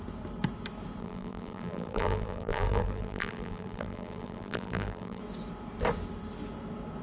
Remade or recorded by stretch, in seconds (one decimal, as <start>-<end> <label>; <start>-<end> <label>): 0.0-1.0 recorded; 1.0-5.2 remade; 5.2-7.0 recorded